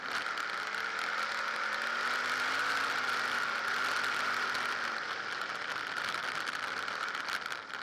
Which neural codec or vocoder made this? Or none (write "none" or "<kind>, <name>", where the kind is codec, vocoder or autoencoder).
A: none